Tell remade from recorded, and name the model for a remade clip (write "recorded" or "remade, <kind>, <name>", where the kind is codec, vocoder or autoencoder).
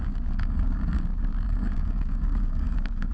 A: remade, codec, DAC